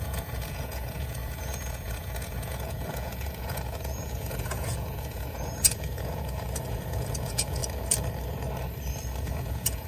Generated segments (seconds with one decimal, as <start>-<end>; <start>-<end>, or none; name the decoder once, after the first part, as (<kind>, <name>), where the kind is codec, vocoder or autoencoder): 0.0-7.6 (vocoder, Vocos); 9.3-9.9